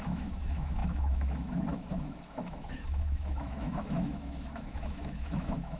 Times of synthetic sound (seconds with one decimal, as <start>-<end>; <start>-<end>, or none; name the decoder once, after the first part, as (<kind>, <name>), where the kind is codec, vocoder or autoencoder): 0.0-5.8 (autoencoder, DAC-VAE)

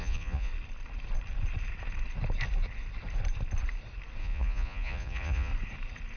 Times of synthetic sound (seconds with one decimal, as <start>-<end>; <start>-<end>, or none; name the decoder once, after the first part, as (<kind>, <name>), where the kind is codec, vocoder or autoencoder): 0.0-0.5 (vocoder, Vocos); 4.2-5.5

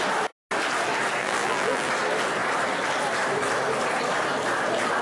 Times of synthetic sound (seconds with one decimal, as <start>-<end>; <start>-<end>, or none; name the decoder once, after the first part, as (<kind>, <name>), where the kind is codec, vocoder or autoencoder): 1.2-1.9 (vocoder, BigVGAN v2)

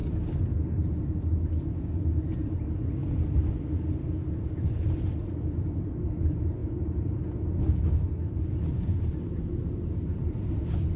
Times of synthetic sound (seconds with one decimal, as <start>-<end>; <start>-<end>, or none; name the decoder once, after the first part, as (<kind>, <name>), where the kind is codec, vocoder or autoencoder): 3.0-3.8 (vocoder, BigVGAN v2)

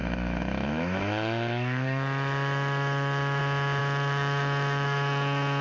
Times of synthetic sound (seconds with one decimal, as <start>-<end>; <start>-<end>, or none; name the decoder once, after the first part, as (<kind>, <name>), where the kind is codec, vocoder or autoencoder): 0.0-3.4 (autoencoder, DAC-VAE); 3.8-5.6

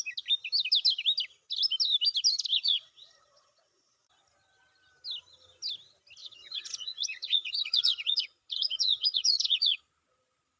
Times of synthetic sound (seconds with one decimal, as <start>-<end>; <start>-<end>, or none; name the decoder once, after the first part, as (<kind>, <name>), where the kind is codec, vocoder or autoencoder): 2.5-4.1 (vocoder, Vocos); 6.2-9.8

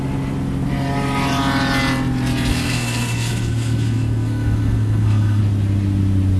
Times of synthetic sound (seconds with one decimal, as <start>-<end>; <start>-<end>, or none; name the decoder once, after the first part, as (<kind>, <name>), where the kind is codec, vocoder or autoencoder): 2.5-5.4 (codec, SNAC)